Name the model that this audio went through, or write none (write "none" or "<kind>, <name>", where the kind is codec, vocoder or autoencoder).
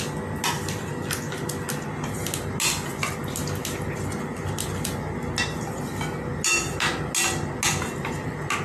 none